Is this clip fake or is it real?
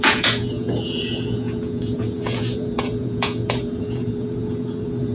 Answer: fake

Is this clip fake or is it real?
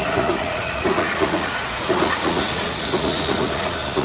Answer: fake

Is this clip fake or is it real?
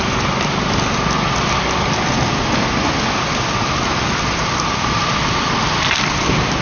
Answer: real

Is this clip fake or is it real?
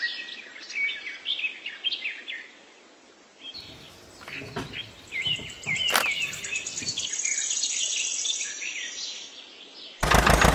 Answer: real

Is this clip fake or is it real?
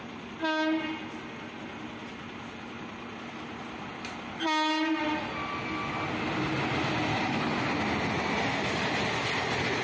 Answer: real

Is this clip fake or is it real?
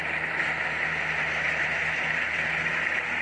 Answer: real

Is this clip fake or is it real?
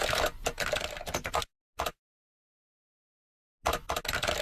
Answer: real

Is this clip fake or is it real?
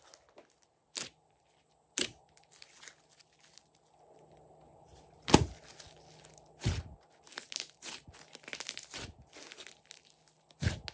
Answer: real